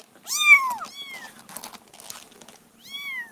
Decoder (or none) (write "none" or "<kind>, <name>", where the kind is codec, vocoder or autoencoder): none